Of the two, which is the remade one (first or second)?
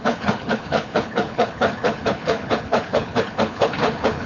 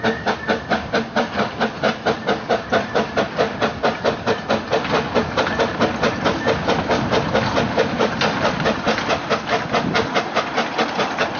first